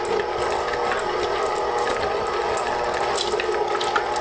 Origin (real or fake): real